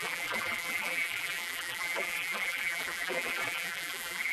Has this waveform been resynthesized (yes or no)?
yes